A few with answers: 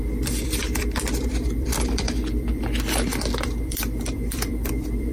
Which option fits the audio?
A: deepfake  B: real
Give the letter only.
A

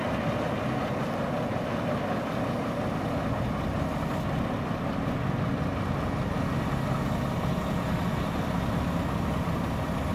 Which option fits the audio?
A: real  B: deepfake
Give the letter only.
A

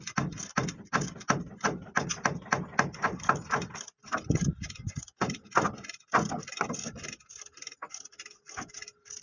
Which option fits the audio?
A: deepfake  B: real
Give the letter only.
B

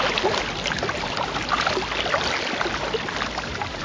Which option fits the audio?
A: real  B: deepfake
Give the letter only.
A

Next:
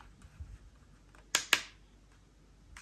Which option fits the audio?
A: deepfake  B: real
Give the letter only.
B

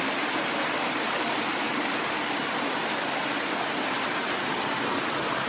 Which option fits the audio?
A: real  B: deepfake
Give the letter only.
A